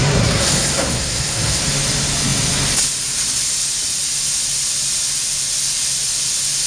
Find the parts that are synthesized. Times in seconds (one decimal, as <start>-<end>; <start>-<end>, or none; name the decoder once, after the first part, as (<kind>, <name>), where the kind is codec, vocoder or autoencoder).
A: 0.0-1.6 (codec, SNAC)